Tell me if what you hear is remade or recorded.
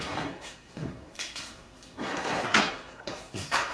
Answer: remade